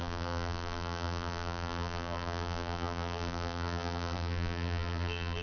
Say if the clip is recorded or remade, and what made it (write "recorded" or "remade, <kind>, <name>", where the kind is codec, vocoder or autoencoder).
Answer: remade, vocoder, BigVGAN v2